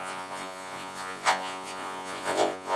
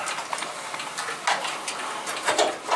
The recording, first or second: second